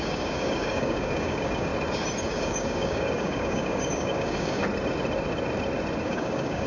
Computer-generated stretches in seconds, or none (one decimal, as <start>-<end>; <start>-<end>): 0.0-1.7; 2.2-4.6; 6.0-6.7